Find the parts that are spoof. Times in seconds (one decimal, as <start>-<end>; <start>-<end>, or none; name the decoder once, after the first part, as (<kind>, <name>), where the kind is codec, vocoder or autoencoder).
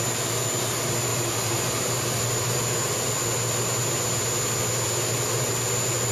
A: 1.1-2.6 (vocoder, BigVGAN v2)